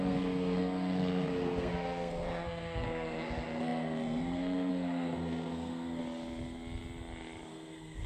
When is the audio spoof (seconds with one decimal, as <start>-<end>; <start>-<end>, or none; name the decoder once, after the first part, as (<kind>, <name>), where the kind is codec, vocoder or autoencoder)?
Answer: 0.0-6.0 (codec, SNAC); 7.5-8.1